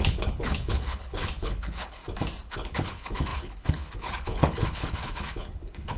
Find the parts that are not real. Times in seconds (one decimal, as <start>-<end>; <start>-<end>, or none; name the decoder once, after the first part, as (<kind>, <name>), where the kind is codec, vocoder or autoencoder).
0.0-2.0 (codec, HILCodec); 2.5-6.0